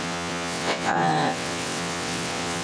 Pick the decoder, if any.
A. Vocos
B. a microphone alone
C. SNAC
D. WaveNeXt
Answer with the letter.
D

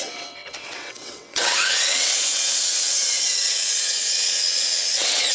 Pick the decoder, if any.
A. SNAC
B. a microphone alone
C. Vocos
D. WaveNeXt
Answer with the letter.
D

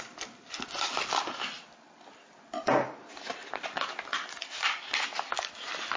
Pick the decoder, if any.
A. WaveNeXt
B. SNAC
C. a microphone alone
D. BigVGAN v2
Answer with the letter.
C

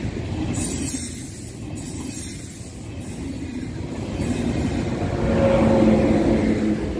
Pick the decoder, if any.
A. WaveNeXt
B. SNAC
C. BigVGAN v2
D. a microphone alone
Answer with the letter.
D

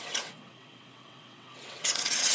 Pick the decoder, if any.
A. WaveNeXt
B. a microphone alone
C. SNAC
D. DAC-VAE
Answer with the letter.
A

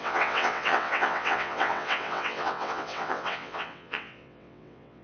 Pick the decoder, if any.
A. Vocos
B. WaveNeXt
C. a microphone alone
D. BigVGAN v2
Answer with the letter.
B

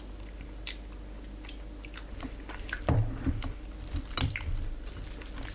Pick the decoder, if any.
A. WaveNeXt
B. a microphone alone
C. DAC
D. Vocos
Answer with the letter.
B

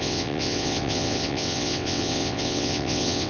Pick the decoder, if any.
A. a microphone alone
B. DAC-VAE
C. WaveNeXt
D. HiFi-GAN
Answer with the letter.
C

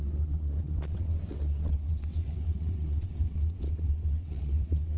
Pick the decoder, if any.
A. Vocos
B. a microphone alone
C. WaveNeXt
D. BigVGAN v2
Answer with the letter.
C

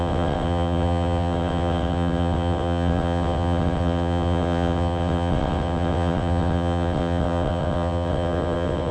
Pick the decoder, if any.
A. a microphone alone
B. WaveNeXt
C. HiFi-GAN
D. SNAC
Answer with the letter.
B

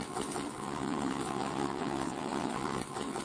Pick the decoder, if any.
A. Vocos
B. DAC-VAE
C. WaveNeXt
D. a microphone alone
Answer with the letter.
C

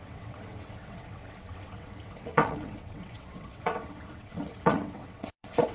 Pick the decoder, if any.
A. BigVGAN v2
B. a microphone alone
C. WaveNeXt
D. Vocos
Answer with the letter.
C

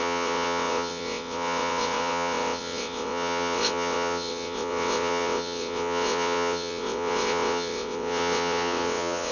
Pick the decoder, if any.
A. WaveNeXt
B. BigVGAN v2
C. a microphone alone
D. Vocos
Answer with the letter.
A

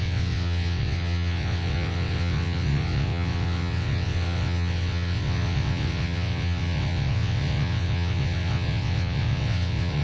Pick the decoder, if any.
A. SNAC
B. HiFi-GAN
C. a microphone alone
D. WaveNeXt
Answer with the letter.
D